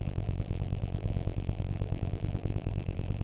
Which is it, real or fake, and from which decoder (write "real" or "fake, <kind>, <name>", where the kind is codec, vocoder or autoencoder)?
fake, vocoder, BigVGAN v2